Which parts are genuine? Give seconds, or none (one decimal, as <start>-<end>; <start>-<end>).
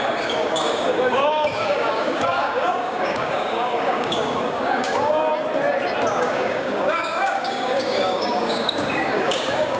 5.3-6.1